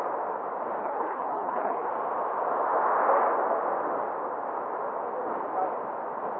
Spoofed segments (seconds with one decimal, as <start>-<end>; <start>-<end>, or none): 0.8-1.9